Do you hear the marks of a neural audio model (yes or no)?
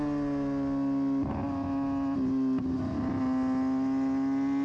no